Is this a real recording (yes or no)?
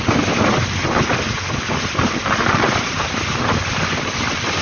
yes